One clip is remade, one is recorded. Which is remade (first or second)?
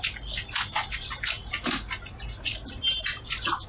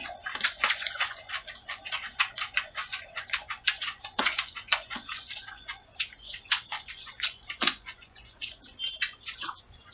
second